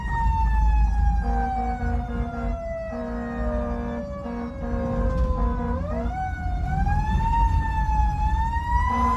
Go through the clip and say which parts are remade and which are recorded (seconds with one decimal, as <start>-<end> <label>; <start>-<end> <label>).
0.0-9.2 recorded